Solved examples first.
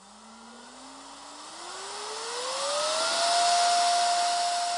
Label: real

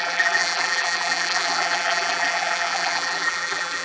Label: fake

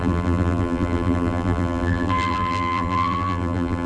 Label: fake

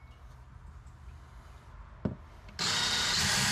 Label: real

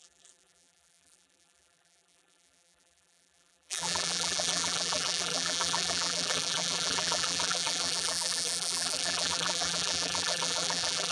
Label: fake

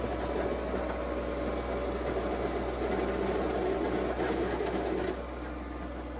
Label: real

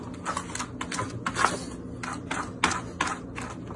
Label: real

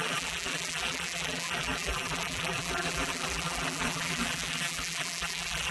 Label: fake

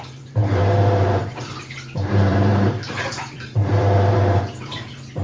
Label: fake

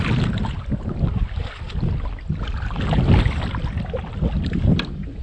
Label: real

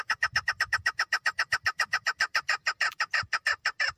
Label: fake